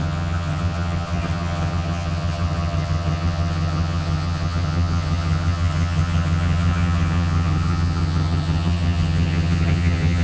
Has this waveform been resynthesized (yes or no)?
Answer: yes